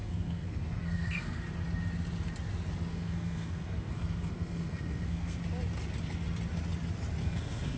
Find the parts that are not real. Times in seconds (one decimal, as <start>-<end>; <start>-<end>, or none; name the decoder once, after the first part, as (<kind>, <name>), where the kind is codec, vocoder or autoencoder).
0.0-1.4 (codec, SNAC); 2.9-5.4; 7.2-7.8